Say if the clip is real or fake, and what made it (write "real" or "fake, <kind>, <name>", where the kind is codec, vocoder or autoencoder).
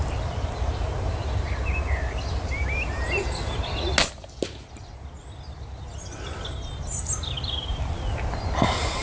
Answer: real